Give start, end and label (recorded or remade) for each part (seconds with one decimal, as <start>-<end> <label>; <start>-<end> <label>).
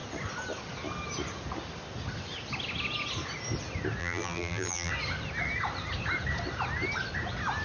0.0-4.0 recorded; 4.0-4.9 remade; 4.9-7.6 recorded